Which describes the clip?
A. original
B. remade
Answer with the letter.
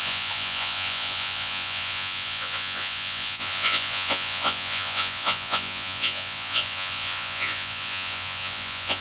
B